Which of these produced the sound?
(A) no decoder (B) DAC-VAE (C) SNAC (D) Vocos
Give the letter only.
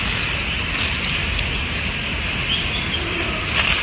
A